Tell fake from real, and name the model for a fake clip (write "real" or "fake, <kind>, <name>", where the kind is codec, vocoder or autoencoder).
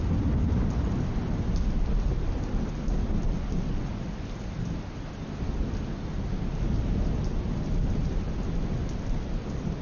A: real